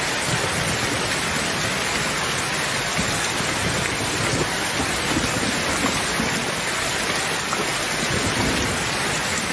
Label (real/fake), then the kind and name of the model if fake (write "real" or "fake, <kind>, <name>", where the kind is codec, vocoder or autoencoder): real